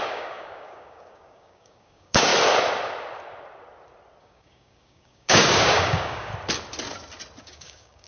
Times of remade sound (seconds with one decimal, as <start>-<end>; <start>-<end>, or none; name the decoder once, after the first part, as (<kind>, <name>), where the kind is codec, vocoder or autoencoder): 0.0-2.3 (codec, DAC); 4.2-6.3; 7.4-8.1